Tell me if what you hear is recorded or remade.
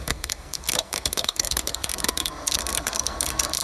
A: remade